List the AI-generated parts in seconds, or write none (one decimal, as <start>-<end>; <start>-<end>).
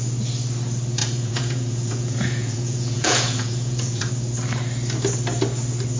1.0-4.1